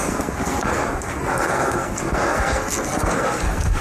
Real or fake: fake